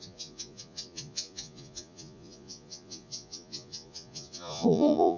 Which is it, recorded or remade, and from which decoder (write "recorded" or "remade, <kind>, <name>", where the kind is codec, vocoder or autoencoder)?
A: remade, vocoder, Vocos